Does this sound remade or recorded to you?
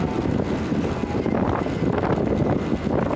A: recorded